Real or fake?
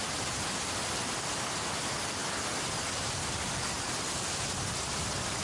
real